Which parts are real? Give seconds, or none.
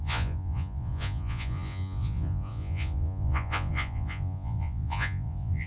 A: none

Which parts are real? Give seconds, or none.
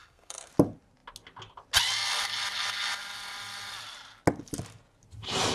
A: 0.5-5.5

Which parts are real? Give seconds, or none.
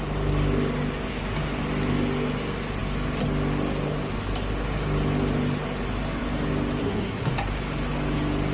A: 0.0-6.8; 7.3-8.5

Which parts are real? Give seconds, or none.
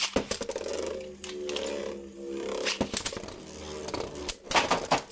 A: 0.0-5.1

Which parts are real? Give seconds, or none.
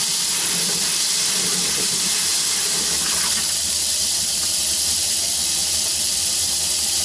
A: none